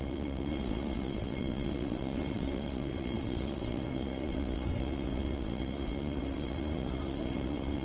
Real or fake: fake